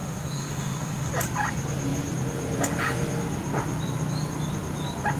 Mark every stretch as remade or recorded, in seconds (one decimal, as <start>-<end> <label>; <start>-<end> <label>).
0.0-1.1 remade; 1.1-5.2 recorded